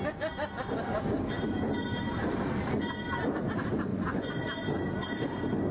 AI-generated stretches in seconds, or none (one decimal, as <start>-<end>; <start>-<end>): 3.9-4.4